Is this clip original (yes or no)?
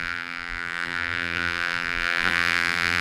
no